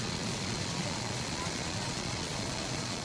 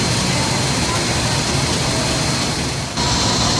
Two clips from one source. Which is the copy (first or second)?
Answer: first